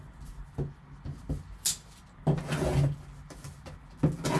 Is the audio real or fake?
real